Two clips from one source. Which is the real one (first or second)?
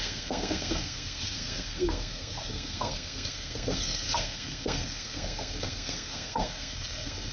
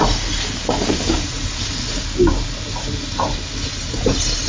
second